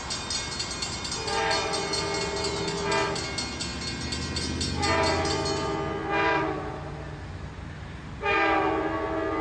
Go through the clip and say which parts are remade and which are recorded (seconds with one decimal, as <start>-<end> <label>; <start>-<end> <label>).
0.0-9.4 recorded

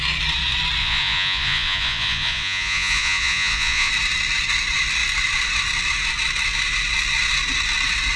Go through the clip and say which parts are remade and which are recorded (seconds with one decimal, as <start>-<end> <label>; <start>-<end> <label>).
0.0-0.8 recorded; 0.8-3.9 remade; 3.9-8.2 recorded

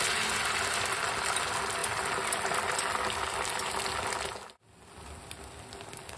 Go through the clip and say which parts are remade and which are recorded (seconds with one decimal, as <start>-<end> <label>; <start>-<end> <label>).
0.0-6.2 recorded